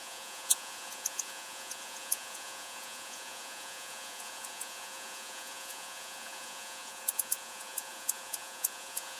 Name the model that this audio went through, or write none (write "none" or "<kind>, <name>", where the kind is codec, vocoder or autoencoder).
vocoder, Vocos